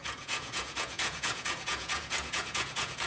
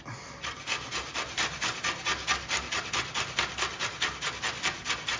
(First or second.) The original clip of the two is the second